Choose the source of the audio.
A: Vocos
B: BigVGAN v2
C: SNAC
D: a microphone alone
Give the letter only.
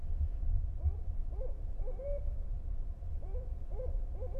B